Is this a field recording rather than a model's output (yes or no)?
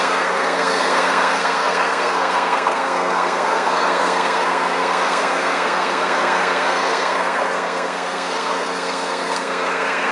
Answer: no